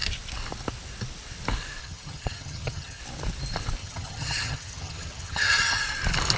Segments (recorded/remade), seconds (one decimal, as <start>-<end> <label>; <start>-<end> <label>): 0.0-1.8 recorded; 1.8-3.0 remade; 3.0-3.8 recorded; 3.8-5.8 remade; 5.8-6.4 recorded